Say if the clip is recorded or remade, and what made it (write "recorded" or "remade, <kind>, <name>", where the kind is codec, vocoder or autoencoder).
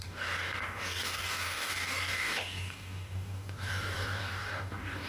remade, codec, DAC